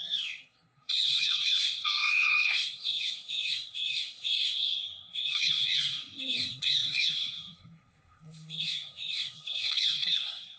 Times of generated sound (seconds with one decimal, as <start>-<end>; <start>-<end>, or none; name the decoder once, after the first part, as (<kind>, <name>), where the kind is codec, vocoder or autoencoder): 0.0-10.6 (codec, SNAC)